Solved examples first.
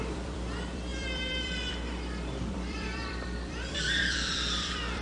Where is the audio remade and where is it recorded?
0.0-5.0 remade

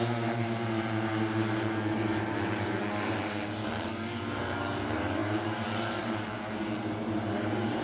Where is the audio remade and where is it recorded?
0.0-7.8 remade

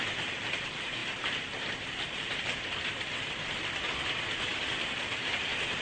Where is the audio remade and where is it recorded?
0.0-1.0 recorded; 1.0-3.4 remade; 3.4-5.8 recorded

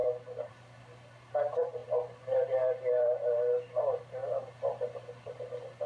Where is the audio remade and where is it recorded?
0.0-0.5 recorded; 0.5-5.9 remade

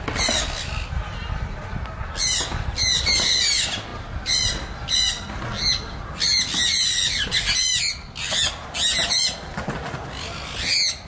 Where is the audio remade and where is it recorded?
0.0-11.1 recorded

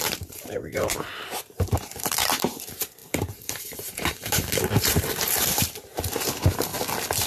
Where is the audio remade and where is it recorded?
0.0-6.7 remade; 6.7-7.3 recorded